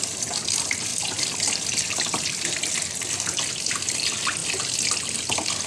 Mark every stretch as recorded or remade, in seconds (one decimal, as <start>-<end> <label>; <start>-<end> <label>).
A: 0.0-5.7 recorded